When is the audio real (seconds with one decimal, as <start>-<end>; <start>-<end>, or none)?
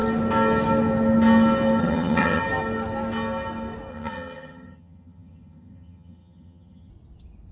0.0-1.8; 2.4-3.9; 6.9-7.5